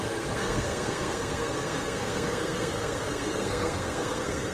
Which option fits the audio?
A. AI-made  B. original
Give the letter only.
A